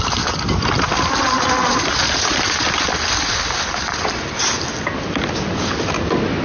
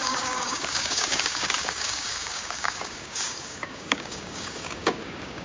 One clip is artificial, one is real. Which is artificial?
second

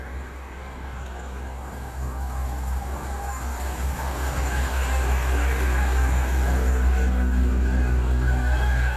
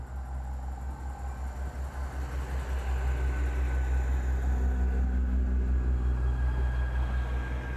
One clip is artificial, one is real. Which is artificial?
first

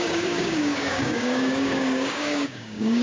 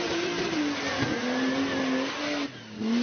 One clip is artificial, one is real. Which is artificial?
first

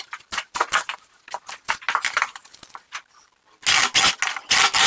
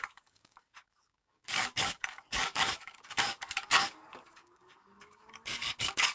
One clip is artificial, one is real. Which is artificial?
second